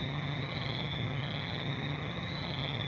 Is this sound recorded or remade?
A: remade